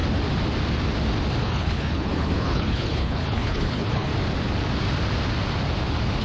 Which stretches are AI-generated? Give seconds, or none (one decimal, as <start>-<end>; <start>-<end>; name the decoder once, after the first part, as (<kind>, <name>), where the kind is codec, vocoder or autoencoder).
1.4-4.1 (codec, HILCodec)